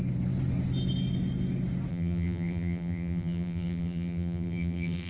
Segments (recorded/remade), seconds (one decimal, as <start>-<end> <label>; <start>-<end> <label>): 0.0-1.9 recorded; 1.9-5.1 remade